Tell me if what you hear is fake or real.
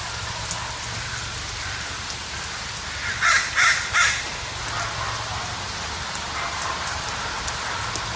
real